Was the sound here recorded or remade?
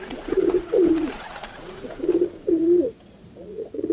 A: remade